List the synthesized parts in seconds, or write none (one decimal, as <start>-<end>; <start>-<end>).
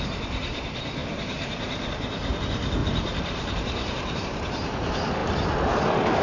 1.0-2.4; 2.8-4.2